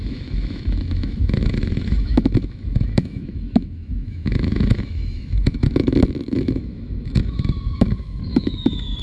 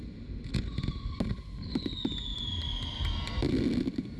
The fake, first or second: first